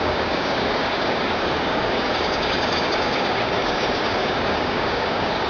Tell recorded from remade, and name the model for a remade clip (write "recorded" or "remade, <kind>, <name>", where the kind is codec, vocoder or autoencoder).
remade, codec, DAC